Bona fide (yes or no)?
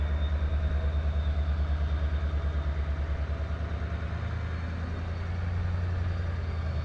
yes